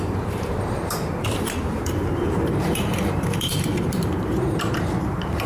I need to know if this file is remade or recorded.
remade